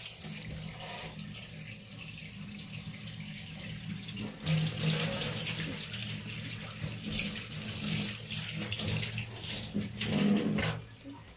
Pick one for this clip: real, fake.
real